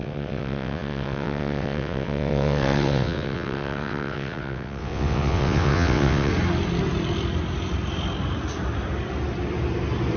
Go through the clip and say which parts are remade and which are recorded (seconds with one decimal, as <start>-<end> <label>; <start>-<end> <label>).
0.0-6.3 remade; 6.3-10.2 recorded